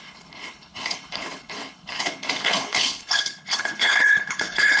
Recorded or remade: remade